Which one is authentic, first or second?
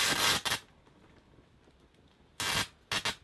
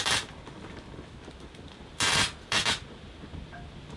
first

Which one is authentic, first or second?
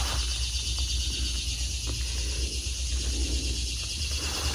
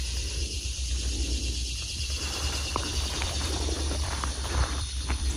first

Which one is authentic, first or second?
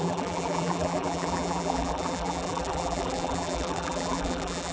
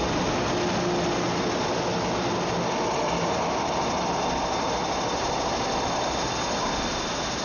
second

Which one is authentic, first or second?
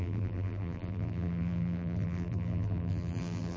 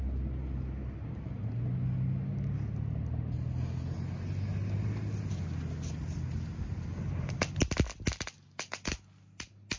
second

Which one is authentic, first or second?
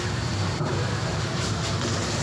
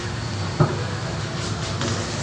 second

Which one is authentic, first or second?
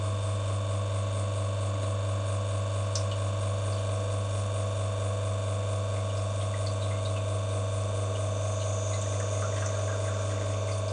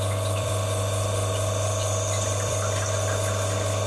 first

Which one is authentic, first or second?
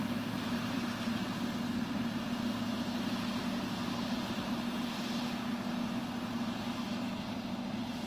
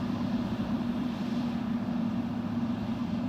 first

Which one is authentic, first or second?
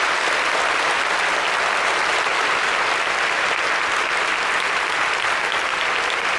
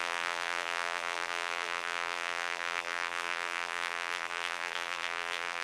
first